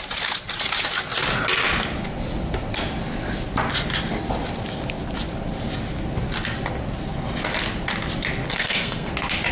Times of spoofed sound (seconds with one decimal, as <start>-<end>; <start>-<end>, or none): 8.5-9.1